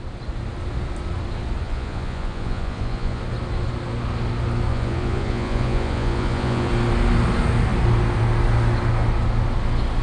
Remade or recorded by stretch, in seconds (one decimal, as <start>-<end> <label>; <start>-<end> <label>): 0.0-1.6 recorded; 1.6-3.2 remade; 3.2-4.7 recorded; 4.7-6.7 remade; 6.7-10.0 recorded